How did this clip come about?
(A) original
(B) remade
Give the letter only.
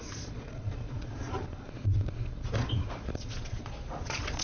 B